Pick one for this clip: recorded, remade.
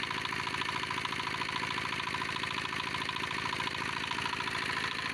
recorded